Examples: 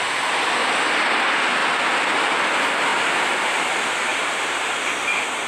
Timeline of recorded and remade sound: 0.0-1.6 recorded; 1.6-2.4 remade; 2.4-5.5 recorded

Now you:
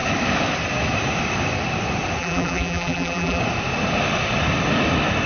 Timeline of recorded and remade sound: 0.0-2.2 recorded; 2.2-3.4 remade; 3.4-5.3 recorded

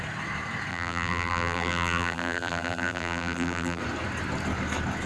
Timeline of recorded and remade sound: 0.0-0.7 recorded; 0.7-3.8 remade; 3.8-5.1 recorded

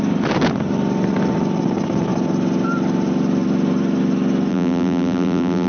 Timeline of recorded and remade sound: 0.0-4.5 recorded; 4.5-5.7 remade

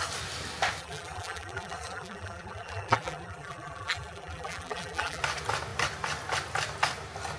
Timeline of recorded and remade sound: 0.0-0.8 recorded; 0.8-5.2 remade; 5.2-7.4 recorded